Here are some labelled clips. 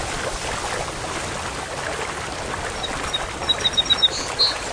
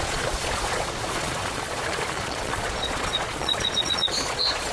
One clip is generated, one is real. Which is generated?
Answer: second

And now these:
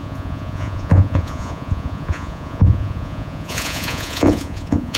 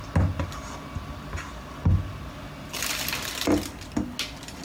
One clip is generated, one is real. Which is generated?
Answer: first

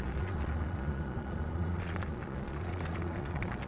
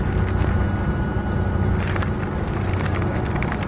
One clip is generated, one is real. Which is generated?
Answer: first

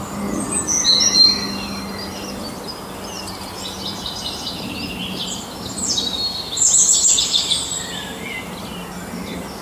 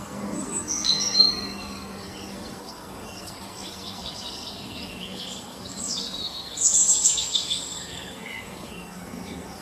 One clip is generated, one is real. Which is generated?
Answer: second